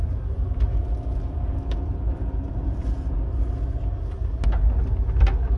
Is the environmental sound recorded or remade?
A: recorded